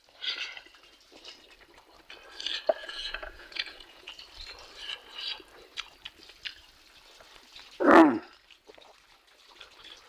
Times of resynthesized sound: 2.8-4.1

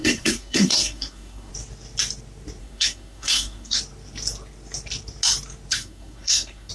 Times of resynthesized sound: 0.0-1.5; 2.6-3.8; 5.7-6.7

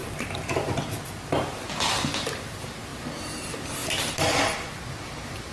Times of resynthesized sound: none